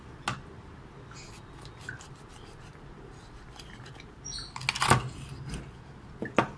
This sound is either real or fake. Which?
real